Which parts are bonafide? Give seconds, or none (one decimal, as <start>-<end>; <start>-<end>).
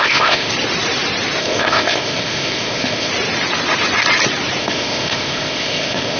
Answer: 0.5-1.4; 3.1-4.6